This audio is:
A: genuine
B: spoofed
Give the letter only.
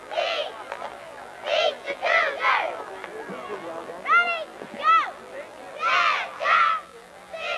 B